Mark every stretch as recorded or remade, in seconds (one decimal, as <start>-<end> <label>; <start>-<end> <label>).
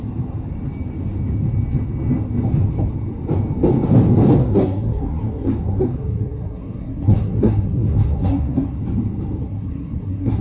0.0-4.4 recorded; 4.4-8.8 remade; 8.8-9.4 recorded; 9.4-10.4 remade